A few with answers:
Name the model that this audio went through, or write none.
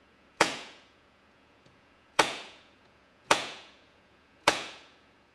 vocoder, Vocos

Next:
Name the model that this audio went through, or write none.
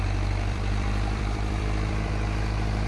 vocoder, BigVGAN v2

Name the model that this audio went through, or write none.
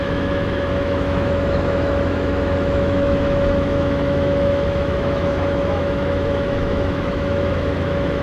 autoencoder, DAC-VAE